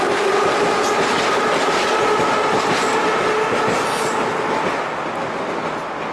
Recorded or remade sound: recorded